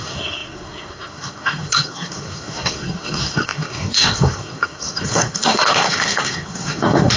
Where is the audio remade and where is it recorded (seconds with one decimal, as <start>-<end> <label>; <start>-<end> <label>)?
0.0-7.2 remade